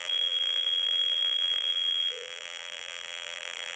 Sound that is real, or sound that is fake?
fake